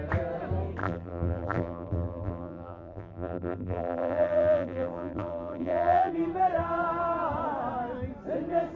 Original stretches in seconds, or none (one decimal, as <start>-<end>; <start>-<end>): 0.0-0.8; 6.1-8.8